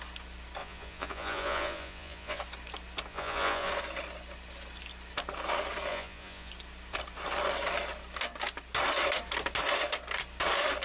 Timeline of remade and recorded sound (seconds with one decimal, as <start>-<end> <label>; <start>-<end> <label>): 0.0-0.6 recorded; 0.6-2.4 remade; 2.4-3.1 recorded; 3.1-3.7 remade; 3.7-5.9 recorded; 5.9-6.5 remade; 6.5-10.8 recorded